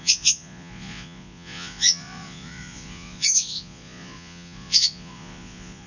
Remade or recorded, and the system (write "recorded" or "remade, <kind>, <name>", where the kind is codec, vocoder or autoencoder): remade, vocoder, Vocos